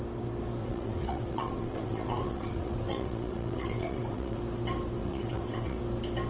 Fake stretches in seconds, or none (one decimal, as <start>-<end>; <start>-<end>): 0.6-4.4; 5.0-5.8